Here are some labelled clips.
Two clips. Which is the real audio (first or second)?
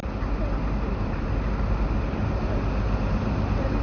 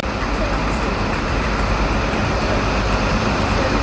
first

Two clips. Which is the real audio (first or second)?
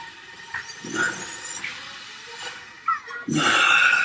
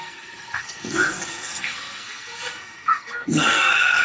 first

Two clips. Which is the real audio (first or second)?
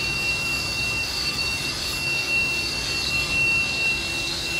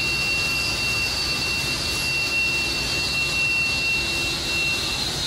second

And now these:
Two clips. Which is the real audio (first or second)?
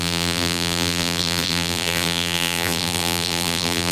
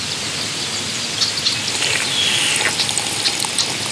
second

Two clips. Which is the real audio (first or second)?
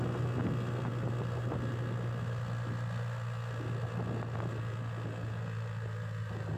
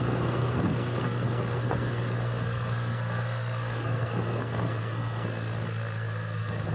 first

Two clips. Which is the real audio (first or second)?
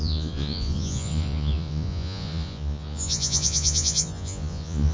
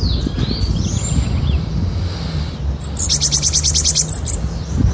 second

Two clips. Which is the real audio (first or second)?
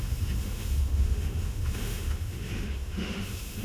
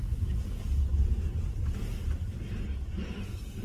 second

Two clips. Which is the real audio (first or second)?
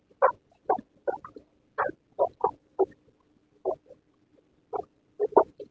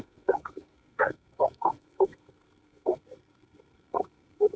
first